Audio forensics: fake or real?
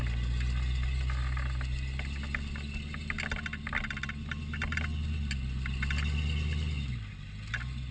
real